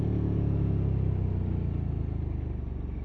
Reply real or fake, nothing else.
real